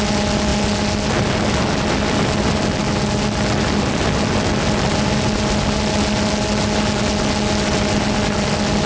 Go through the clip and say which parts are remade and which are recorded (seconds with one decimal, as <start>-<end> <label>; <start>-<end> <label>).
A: 0.0-8.9 recorded